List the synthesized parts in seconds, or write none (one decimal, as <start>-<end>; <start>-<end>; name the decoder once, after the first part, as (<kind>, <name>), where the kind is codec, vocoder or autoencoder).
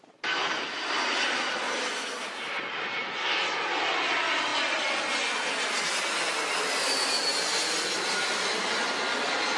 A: none